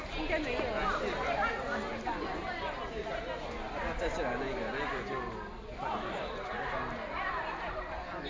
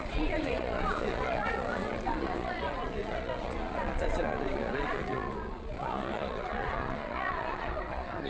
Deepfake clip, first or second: second